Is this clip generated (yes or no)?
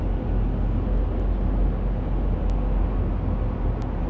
no